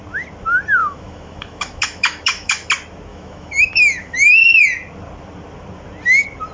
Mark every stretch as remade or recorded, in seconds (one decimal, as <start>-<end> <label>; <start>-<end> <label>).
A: 0.0-0.8 recorded; 0.8-2.7 remade; 2.7-3.1 recorded; 3.1-4.6 remade; 4.6-6.5 recorded